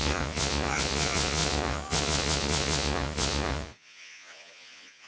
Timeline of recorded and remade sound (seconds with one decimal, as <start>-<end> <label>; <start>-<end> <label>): 0.0-5.1 remade